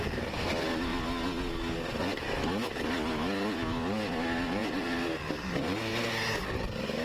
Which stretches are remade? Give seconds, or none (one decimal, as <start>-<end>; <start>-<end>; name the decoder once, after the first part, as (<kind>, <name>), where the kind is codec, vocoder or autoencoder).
none